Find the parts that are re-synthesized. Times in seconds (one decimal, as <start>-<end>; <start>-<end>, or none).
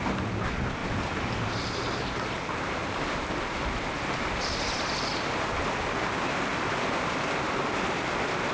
0.8-2.0; 2.8-6.2